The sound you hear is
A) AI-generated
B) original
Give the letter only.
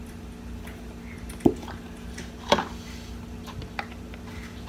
B